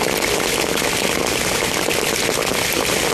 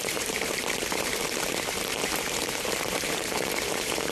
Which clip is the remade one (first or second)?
second